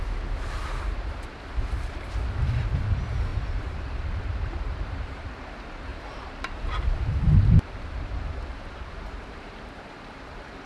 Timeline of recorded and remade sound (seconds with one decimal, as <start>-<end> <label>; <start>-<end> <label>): 0.0-3.3 recorded; 3.3-5.2 remade; 5.2-5.9 recorded; 5.9-10.7 remade